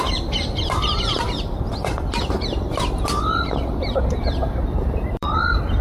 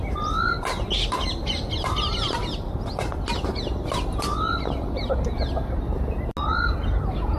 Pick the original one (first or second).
second